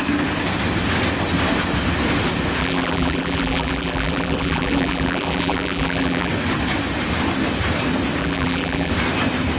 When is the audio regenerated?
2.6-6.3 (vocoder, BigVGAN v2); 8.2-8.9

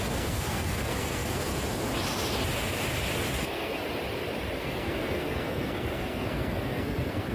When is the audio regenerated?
0.0-1.5 (codec, SNAC); 3.4-3.8; 4.6-7.3

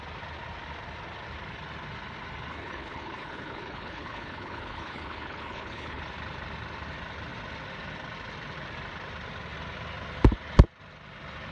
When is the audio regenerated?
2.5-6.0 (codec, HILCodec)